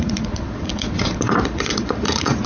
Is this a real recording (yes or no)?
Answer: no